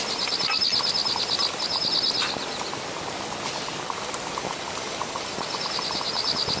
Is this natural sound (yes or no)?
yes